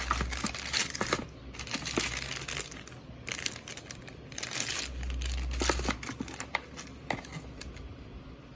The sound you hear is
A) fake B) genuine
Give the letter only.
B